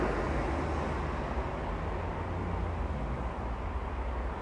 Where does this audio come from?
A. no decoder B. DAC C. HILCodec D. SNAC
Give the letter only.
A